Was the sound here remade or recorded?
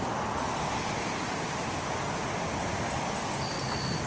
recorded